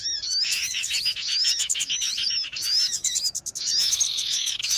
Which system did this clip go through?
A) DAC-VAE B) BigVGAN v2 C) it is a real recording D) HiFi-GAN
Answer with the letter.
A